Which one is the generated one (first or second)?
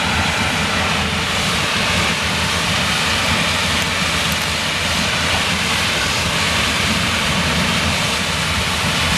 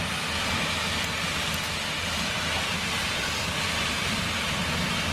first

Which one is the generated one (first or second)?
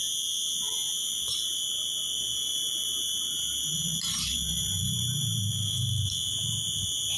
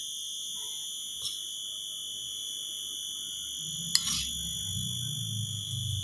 first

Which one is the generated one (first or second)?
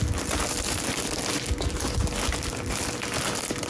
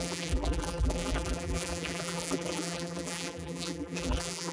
second